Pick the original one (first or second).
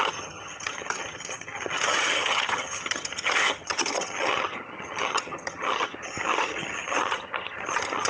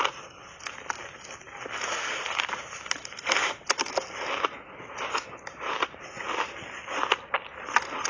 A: second